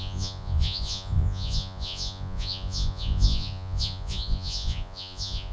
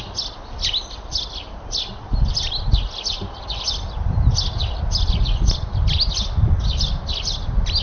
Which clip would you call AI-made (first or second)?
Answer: first